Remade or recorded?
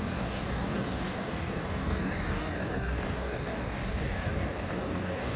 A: remade